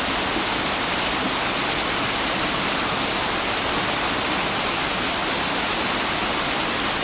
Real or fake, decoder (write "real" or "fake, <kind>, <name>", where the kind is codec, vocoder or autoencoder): real